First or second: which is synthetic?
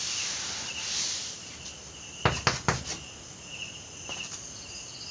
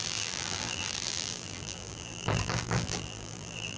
second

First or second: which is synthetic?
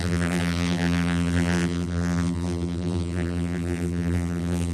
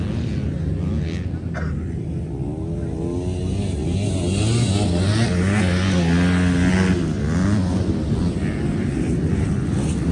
first